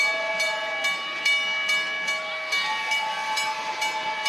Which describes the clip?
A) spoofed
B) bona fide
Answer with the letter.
B